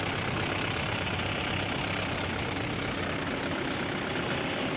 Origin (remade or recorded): recorded